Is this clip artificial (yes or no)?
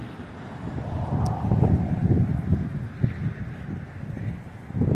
no